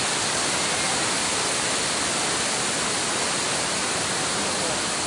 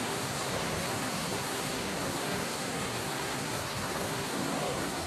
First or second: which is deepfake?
second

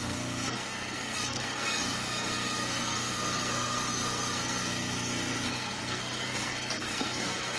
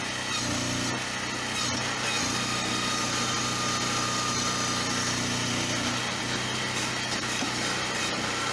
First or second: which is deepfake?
first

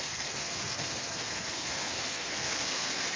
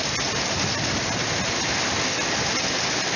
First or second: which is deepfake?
first